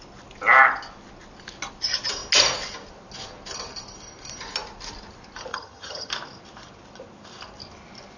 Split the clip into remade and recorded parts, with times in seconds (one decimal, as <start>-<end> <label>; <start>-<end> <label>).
0.0-5.5 recorded; 5.5-6.1 remade; 6.1-8.2 recorded